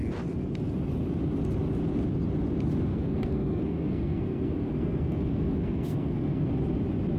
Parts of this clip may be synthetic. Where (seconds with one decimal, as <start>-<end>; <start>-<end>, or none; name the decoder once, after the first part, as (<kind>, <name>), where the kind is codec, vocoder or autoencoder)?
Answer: 2.9-6.5 (codec, SNAC)